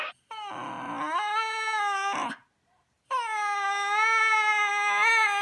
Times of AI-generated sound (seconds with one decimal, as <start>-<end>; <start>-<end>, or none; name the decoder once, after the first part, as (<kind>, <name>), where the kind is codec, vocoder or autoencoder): none